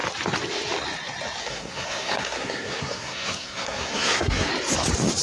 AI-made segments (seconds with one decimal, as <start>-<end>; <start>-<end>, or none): 1.4-4.5